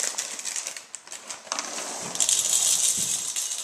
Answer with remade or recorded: recorded